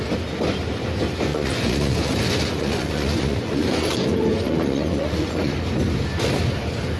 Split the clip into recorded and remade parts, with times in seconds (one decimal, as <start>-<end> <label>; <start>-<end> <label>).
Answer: 0.0-1.3 recorded; 1.3-5.5 remade; 5.5-7.0 recorded